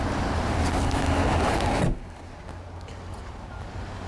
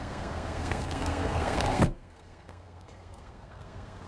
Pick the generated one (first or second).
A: second